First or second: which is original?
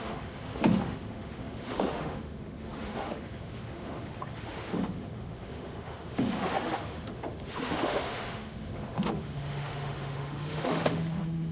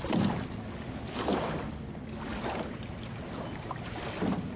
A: second